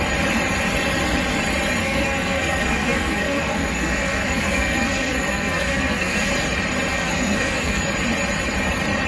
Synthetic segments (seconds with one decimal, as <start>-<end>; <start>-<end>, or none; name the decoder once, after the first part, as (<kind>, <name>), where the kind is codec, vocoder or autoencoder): 1.8-6.3 (codec, SNAC); 6.9-7.8